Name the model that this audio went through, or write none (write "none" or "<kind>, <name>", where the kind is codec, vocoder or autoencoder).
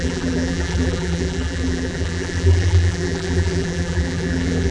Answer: vocoder, BigVGAN v2